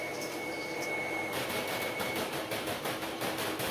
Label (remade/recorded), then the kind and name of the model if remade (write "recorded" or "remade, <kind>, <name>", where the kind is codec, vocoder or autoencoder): remade, vocoder, BigVGAN v2